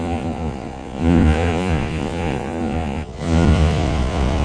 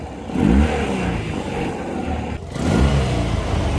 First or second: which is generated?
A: first